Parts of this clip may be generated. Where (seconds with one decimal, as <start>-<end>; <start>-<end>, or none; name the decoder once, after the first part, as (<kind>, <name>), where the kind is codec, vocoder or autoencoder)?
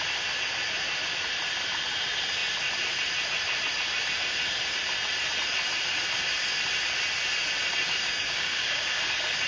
8.0-9.0 (codec, DAC)